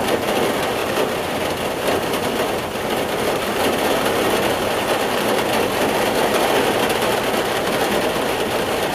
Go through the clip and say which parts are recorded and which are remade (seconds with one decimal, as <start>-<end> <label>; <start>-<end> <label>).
0.0-8.9 recorded